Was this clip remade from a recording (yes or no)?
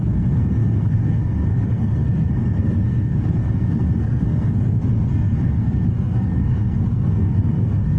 yes